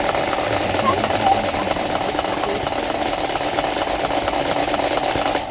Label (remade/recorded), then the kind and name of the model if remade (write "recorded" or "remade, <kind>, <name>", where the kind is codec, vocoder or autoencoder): recorded